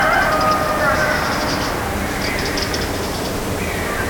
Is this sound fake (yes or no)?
no